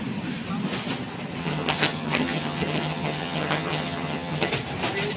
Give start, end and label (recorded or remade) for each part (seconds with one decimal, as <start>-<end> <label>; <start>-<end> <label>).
0.0-1.4 recorded; 1.4-4.5 remade; 4.5-5.2 recorded